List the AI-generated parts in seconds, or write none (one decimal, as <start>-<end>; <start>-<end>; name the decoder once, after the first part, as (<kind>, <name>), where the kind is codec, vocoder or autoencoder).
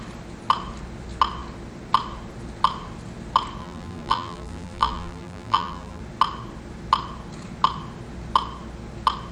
3.6-6.0 (vocoder, BigVGAN v2)